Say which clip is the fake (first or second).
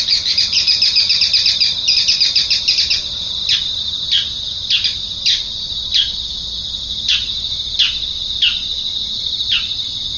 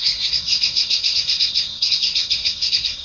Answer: second